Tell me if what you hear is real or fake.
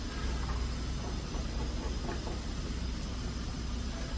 real